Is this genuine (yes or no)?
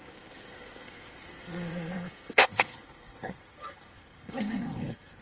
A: no